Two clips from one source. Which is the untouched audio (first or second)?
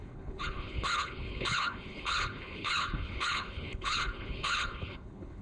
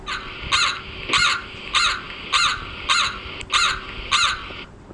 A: second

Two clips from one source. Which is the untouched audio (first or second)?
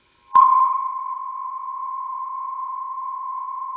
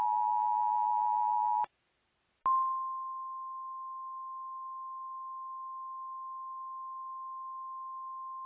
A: second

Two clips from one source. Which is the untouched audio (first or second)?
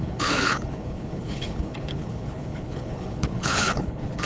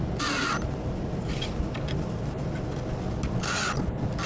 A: second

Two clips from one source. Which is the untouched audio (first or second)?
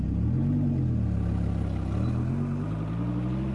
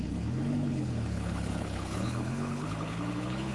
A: first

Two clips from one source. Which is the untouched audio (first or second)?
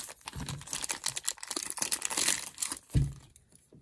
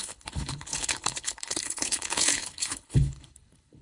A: first